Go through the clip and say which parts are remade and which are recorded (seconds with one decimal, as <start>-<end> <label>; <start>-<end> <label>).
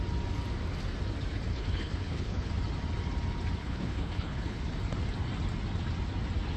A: 0.0-1.5 recorded; 1.5-2.5 remade; 2.5-3.6 recorded; 3.6-4.6 remade; 4.6-6.6 recorded